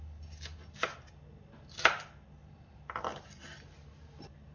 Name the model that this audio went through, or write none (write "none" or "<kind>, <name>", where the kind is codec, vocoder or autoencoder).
none